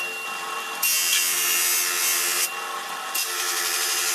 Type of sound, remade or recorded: remade